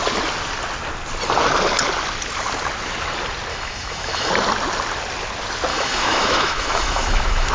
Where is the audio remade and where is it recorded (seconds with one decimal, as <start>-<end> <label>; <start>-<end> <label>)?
0.0-3.5 recorded; 3.5-4.3 remade; 4.3-5.7 recorded; 5.7-7.5 remade